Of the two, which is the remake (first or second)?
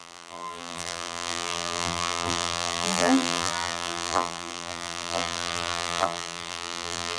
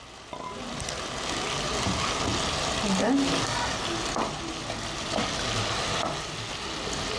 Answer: first